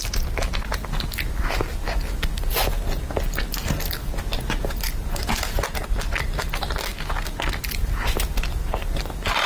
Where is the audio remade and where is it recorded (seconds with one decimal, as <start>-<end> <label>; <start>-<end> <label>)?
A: 0.0-9.5 recorded